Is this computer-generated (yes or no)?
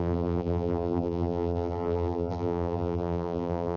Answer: yes